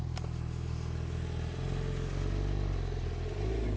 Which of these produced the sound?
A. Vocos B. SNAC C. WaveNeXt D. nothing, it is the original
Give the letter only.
D